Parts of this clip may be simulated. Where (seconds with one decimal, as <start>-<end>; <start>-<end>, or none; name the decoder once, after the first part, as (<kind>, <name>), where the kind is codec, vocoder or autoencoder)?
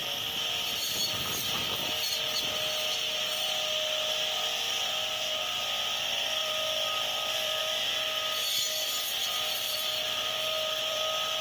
6.4-7.6 (vocoder, BigVGAN v2); 9.2-11.0